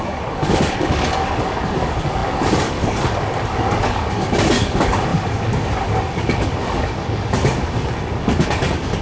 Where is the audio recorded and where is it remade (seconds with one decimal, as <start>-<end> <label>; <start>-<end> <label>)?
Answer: 0.0-9.0 remade